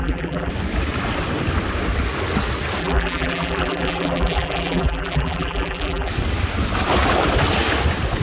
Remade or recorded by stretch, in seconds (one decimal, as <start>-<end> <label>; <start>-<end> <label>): 0.0-0.5 remade; 0.5-2.8 recorded; 2.8-6.1 remade; 6.1-8.2 recorded